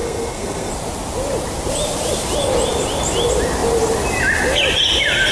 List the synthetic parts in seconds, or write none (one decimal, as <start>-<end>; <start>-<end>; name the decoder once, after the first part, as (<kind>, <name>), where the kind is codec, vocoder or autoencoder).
0.0-0.7 (codec, SNAC)